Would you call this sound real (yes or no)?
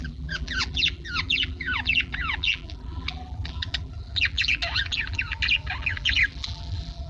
no